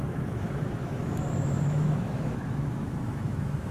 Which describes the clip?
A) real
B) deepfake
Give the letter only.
B